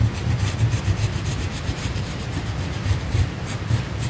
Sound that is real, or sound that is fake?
fake